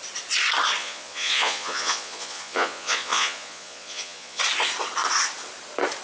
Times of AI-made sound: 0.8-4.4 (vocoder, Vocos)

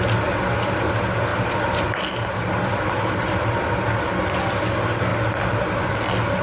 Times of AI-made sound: 1.3-4.3 (vocoder, BigVGAN v2)